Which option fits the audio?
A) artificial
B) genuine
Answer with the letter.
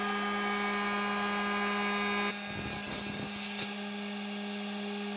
B